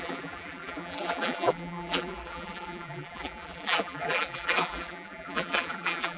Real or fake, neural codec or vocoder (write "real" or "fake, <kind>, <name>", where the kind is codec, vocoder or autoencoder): fake, vocoder, BigVGAN v2